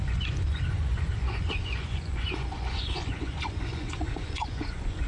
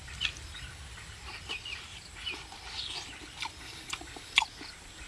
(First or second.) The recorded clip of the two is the second